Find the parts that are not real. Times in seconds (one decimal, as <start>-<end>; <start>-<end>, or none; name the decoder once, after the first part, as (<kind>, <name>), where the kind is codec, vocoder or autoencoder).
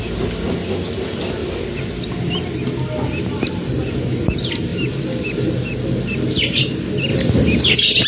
none